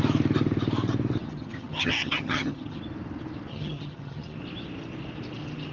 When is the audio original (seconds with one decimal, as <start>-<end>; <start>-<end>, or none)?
0.0-1.2; 2.8-3.5; 4.4-5.7